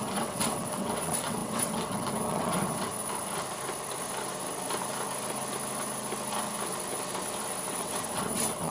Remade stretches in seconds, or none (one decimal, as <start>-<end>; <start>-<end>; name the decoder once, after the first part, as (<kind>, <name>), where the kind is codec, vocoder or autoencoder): 0.0-2.9 (vocoder, WaveNeXt); 7.7-8.7